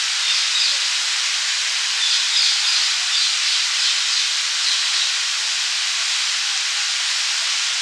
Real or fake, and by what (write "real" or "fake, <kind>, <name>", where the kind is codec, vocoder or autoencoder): real